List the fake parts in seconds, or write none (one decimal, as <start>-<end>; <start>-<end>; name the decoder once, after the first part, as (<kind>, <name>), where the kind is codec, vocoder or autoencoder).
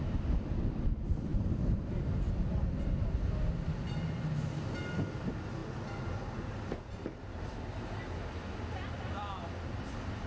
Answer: none